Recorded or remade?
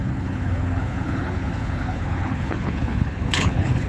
remade